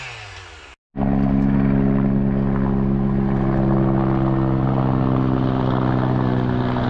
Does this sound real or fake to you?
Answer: real